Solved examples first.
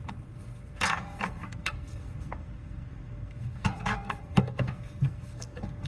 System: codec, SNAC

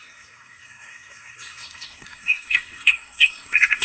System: codec, SNAC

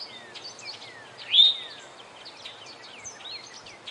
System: none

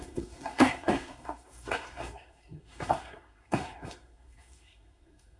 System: codec, SNAC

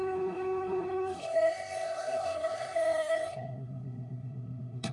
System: codec, SNAC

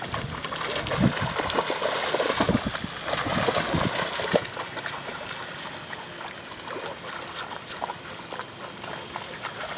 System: none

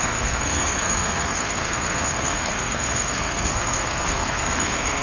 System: codec, SNAC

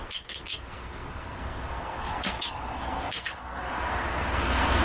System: codec, SNAC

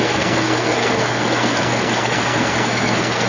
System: codec, SNAC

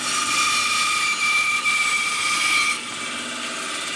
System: none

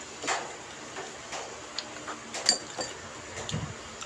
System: none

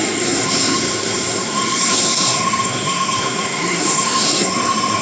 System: codec, SNAC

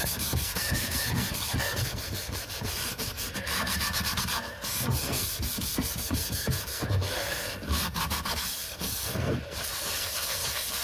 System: codec, SNAC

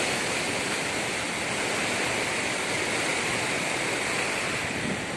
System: none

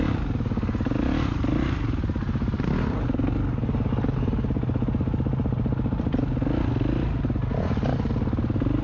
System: none